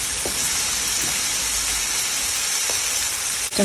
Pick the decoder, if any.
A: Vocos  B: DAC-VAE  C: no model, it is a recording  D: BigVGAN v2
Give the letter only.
C